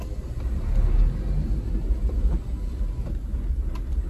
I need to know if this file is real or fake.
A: real